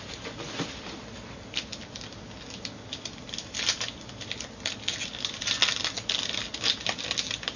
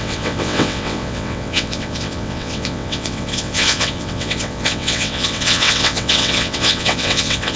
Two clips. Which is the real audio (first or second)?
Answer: first